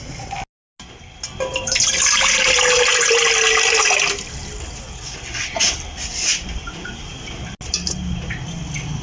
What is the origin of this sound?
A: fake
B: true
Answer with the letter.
B